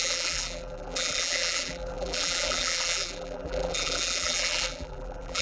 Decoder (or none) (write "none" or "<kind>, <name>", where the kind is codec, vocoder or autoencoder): vocoder, BigVGAN v2